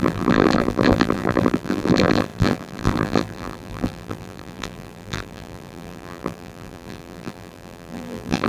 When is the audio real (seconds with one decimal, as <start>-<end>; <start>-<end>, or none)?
none